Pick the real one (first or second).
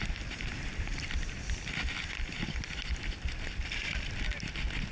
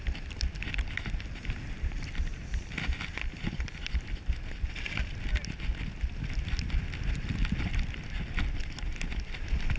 second